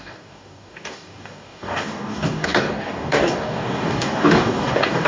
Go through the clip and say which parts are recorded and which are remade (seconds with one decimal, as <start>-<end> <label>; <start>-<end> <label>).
0.0-5.1 remade